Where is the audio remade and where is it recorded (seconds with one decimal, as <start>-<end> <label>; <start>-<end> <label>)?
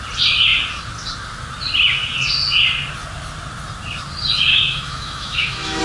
0.0-4.5 recorded; 4.5-5.8 remade